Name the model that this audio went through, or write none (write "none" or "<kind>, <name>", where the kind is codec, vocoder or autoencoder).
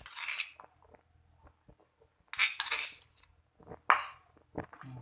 none